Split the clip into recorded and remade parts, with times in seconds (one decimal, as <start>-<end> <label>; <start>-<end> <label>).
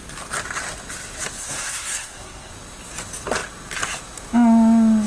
0.0-1.4 recorded; 1.4-2.5 remade; 2.5-5.1 recorded